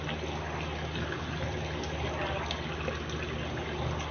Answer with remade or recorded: recorded